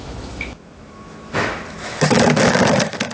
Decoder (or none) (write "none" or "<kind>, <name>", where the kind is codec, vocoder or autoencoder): autoencoder, DAC-VAE